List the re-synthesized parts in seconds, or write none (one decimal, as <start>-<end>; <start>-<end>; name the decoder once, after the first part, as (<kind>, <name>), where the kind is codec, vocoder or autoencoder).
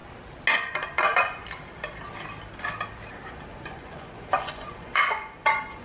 0.5-1.4 (vocoder, Vocos); 3.5-5.8